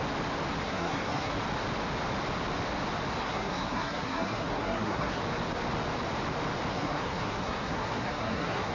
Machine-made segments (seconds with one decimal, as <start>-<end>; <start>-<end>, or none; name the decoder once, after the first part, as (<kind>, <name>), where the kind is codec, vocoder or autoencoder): 0.6-1.3 (codec, SNAC); 3.2-5.2; 6.7-8.7